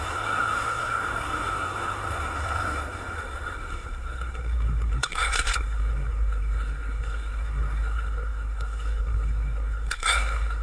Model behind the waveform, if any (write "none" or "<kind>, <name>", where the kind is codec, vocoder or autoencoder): codec, SNAC